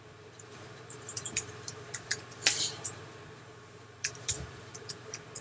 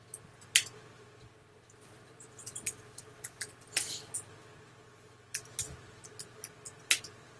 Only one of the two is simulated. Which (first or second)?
first